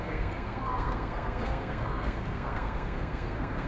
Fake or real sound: fake